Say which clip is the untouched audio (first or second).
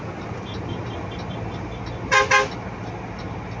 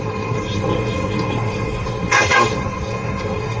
first